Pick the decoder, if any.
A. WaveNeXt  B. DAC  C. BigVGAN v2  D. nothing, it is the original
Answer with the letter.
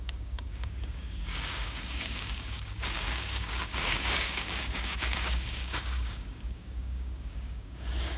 B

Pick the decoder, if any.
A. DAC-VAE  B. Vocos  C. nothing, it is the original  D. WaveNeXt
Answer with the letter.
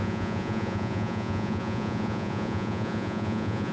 B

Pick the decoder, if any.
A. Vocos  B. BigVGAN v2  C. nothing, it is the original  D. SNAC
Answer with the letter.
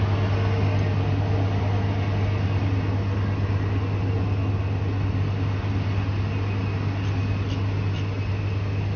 C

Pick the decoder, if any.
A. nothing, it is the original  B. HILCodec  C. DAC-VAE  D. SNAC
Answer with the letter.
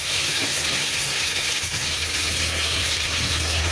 D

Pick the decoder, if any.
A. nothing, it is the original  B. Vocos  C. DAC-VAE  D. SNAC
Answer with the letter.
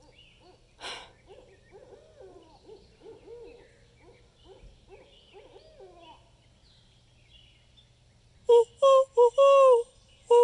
A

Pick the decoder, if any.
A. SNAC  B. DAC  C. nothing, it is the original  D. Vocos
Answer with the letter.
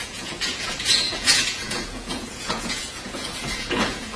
D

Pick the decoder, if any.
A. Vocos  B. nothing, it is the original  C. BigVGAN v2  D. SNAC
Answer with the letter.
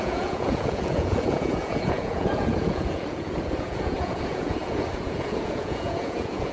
A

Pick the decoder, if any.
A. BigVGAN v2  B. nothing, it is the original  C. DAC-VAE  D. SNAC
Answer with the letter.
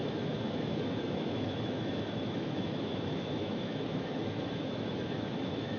C